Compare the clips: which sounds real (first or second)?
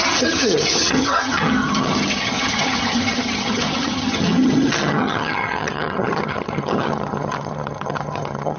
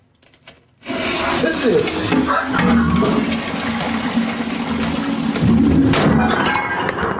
second